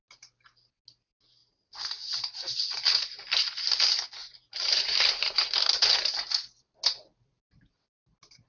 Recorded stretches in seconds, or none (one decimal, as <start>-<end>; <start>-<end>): 0.0-1.4; 3.2-4.2; 5.5-8.5